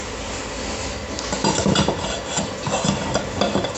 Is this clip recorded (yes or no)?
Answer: yes